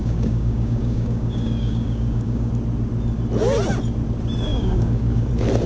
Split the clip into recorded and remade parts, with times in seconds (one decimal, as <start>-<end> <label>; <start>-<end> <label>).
0.0-2.5 remade; 2.5-4.5 recorded; 4.5-5.3 remade; 5.3-5.7 recorded